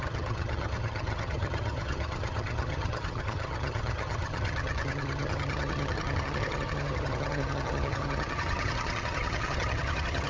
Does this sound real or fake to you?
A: fake